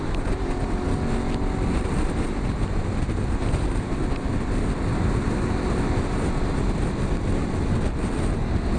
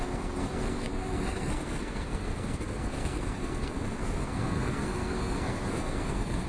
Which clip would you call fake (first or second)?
second